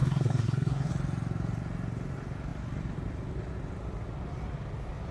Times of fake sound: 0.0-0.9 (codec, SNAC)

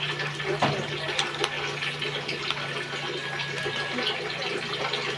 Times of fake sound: none

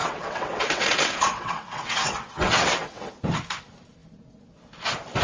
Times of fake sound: 0.0-3.1 (vocoder, WaveNeXt)

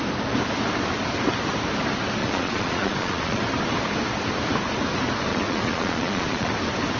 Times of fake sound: 2.2-3.4 (vocoder, Vocos); 5.3-6.5

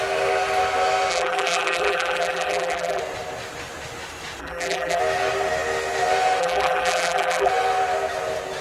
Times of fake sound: 1.1-3.0 (vocoder, BigVGAN v2); 4.4-5.0; 6.4-7.5

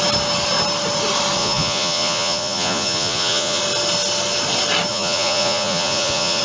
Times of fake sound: 1.4-3.6 (vocoder, Vocos); 4.9-6.4

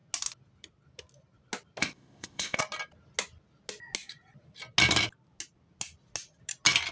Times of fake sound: 1.8-2.6 (codec, ZipCodec)